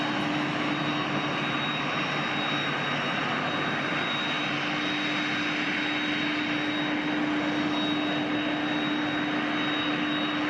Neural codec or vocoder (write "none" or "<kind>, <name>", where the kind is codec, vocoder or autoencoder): none